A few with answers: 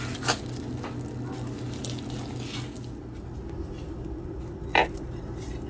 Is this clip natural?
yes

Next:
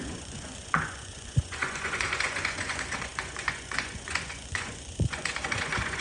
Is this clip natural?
no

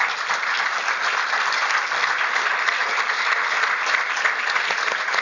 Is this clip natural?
yes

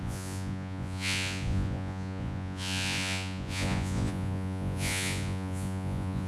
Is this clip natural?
no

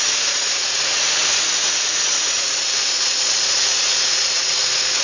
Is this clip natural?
no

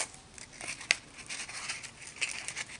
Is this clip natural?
yes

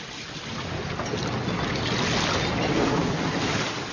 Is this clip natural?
yes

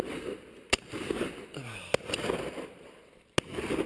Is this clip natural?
yes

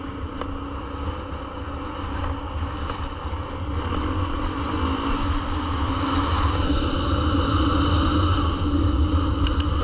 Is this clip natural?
yes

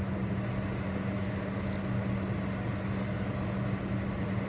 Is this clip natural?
yes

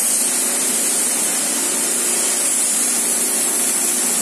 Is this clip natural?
yes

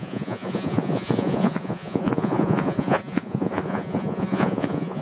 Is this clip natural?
no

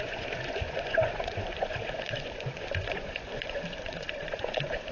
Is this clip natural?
no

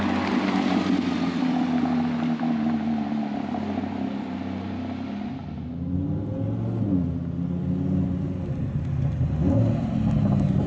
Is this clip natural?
yes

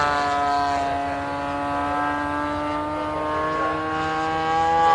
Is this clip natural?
yes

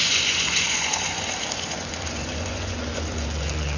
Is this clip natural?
no